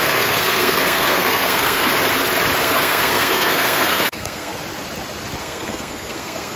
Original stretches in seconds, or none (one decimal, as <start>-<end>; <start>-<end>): 1.9-2.6; 4.5-5.4